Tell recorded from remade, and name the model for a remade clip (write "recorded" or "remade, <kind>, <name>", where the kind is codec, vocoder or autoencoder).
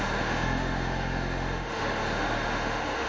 remade, autoencoder, DAC-VAE